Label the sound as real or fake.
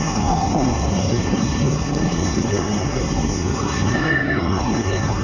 fake